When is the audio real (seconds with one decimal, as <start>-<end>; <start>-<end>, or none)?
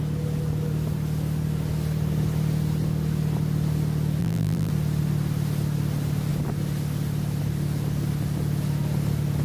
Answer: 0.0-4.2; 4.7-9.4